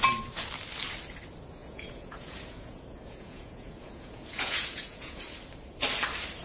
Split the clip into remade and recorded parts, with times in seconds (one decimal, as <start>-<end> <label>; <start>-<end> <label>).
0.0-1.6 recorded; 1.6-5.2 remade; 5.2-6.4 recorded